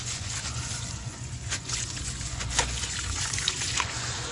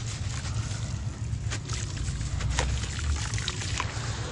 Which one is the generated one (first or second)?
first